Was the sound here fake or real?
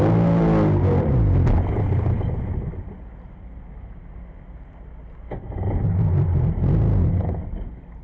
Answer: real